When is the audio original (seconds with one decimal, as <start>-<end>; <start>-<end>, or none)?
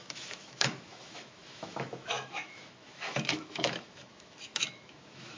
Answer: none